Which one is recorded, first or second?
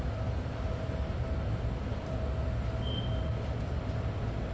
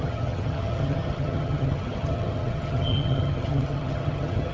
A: first